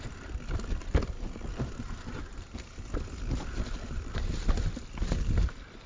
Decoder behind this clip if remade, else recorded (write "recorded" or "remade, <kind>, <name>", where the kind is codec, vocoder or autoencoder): recorded